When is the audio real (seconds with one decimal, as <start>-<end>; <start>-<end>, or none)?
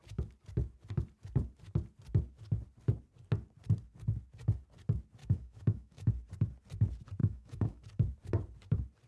0.0-5.2; 6.1-7.2; 7.8-9.1